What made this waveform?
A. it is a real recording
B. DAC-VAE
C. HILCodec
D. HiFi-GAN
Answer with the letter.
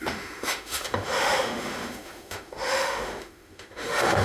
B